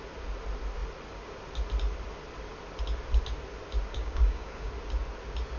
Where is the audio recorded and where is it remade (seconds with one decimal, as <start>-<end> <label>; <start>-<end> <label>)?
0.0-3.9 recorded; 3.9-4.7 remade; 4.7-5.6 recorded